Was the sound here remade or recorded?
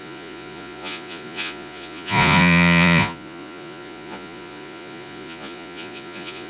remade